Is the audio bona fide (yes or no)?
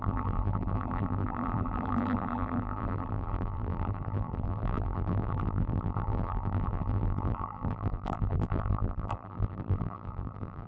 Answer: no